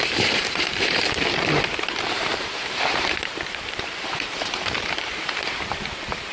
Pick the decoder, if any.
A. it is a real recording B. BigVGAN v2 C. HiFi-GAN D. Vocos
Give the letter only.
B